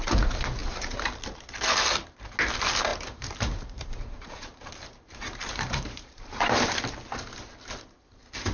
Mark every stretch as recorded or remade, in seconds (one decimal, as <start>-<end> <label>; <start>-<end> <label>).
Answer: 0.0-0.6 recorded; 0.6-1.2 remade; 1.2-2.9 recorded; 2.9-6.8 remade; 6.8-8.5 recorded